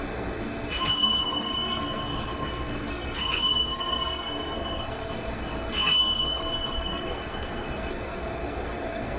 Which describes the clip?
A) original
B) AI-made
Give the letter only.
B